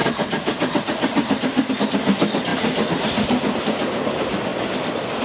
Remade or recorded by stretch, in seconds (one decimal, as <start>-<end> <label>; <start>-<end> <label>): 0.0-1.7 remade; 1.7-2.5 recorded; 2.5-3.6 remade; 3.6-4.5 recorded; 4.5-5.2 remade